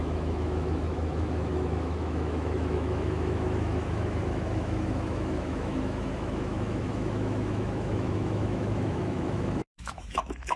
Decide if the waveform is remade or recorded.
remade